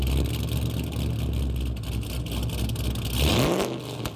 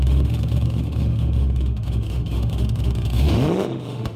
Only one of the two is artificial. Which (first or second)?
second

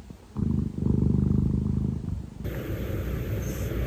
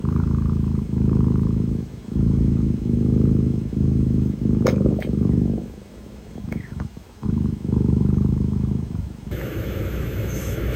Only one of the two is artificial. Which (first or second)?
second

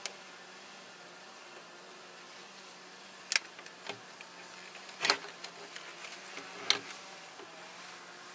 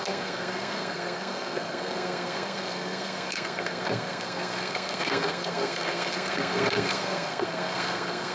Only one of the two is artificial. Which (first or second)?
second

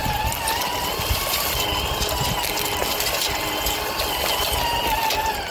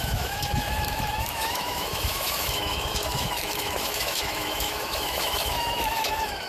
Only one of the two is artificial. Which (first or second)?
second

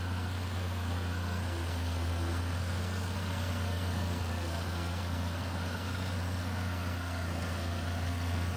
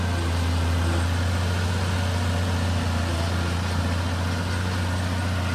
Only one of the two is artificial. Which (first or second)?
first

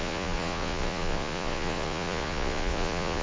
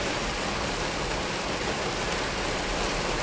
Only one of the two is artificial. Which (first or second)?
first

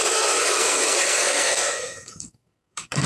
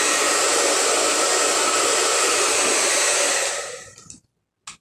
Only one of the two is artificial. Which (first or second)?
first